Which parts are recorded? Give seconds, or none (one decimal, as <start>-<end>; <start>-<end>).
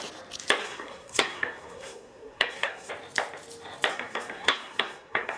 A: 0.0-0.6; 2.9-3.9